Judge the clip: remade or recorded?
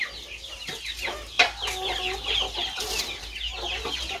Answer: recorded